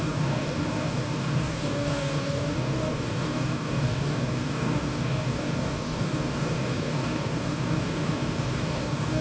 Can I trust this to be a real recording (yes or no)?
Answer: no